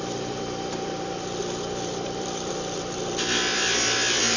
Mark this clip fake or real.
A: fake